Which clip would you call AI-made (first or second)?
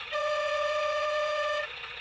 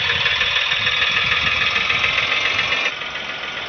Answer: first